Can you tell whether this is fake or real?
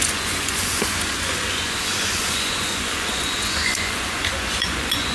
fake